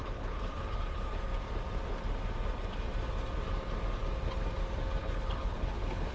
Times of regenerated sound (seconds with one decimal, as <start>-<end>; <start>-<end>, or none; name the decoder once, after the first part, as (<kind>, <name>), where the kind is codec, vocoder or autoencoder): 0.0-1.3 (codec, HILCodec); 5.0-6.1